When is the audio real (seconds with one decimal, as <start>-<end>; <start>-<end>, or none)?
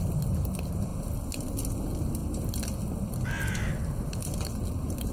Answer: 0.0-5.1